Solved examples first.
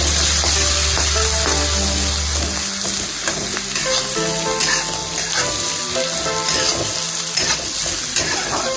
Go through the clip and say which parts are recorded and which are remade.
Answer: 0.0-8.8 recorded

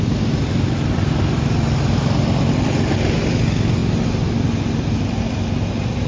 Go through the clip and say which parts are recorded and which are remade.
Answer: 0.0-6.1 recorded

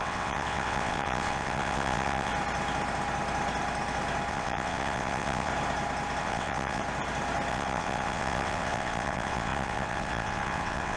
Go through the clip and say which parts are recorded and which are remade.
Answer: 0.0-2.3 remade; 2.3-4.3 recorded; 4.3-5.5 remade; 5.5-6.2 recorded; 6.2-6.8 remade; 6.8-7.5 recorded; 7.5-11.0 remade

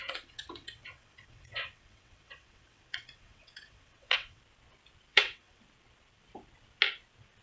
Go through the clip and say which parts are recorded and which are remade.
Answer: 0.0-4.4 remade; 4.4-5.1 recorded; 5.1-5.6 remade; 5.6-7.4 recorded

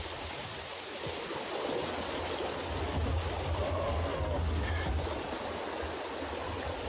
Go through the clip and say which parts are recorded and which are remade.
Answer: 0.0-6.9 recorded

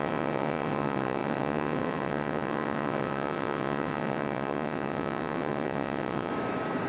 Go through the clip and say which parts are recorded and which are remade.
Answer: 0.0-6.3 remade; 6.3-6.9 recorded

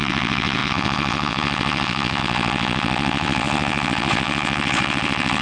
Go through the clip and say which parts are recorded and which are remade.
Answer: 0.0-5.4 remade

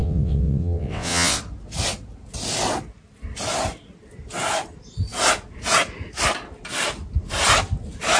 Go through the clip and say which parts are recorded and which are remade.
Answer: 0.0-1.4 remade; 1.4-8.2 recorded